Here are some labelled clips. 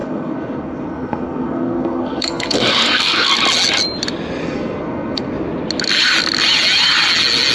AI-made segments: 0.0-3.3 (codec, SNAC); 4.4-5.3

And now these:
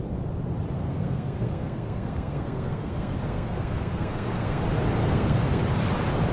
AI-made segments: 0.8-4.6 (codec, SNAC); 5.0-5.6

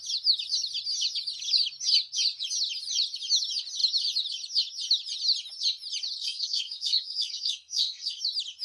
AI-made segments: 6.2-8.2 (codec, SNAC)

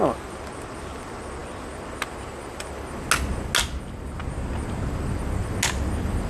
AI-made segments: none

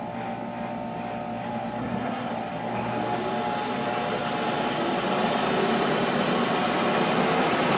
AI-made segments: 1.8-2.3 (codec, SNAC)

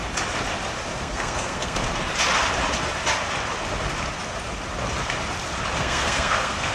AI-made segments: 1.0-1.8 (codec, SNAC); 5.8-6.7